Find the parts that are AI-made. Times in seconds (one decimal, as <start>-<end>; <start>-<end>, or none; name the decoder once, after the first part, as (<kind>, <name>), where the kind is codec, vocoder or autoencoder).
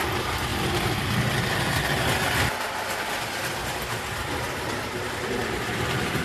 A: none